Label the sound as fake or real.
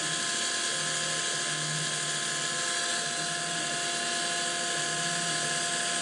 real